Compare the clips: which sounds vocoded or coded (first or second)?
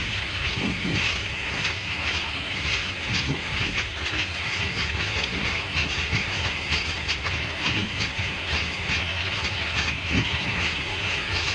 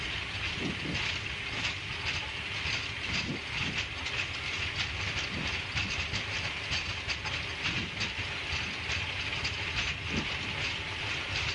first